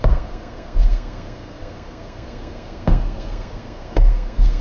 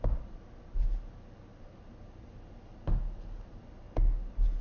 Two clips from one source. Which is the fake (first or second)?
first